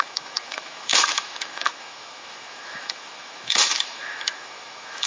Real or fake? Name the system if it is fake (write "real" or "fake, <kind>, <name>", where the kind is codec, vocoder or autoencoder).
fake, autoencoder, DAC-VAE